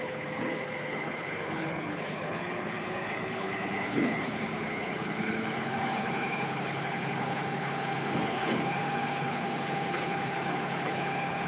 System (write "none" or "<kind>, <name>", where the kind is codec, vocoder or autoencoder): codec, HILCodec